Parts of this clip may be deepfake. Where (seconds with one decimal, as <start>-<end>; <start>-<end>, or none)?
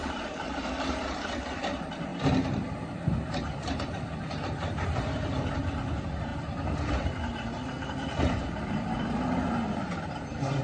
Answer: 0.0-6.3; 8.3-10.6